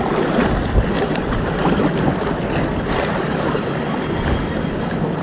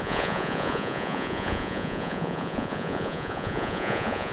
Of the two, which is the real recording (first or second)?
first